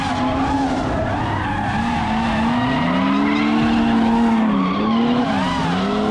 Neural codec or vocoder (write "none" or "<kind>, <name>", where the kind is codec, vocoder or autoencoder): none